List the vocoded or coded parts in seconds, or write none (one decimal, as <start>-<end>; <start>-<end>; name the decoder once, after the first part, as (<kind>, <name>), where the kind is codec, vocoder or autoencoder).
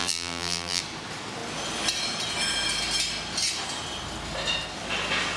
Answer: 0.0-0.8 (vocoder, BigVGAN v2)